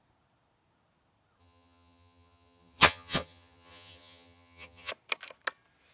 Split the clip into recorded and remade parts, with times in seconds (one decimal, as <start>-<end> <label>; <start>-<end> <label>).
0.0-1.4 recorded; 1.4-4.9 remade; 4.9-5.9 recorded